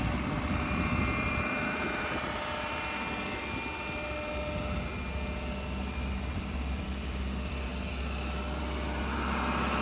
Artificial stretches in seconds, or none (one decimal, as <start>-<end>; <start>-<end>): 0.0-1.8; 5.8-7.7; 8.6-9.8